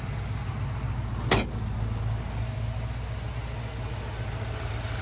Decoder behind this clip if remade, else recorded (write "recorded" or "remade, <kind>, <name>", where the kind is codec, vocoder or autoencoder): recorded